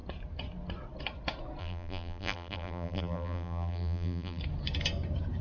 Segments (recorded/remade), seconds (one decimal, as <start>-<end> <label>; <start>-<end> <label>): 0.0-1.6 recorded; 1.6-4.4 remade; 4.4-5.4 recorded